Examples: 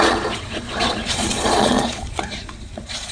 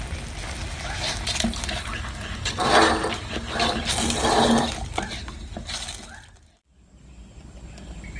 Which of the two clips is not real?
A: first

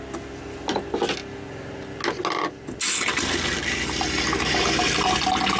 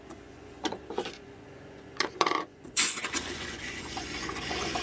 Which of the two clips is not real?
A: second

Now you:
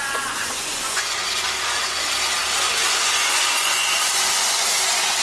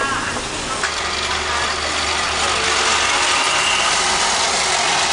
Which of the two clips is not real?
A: first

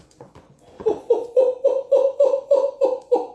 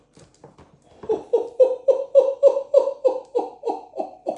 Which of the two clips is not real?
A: first